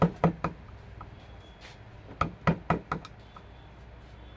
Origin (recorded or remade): recorded